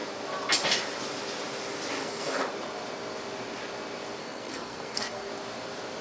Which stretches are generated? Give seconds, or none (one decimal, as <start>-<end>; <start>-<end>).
2.0-2.5; 4.2-5.3